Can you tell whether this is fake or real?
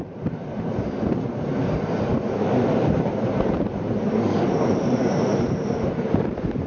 fake